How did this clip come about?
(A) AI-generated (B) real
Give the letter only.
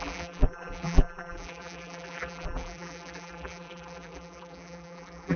A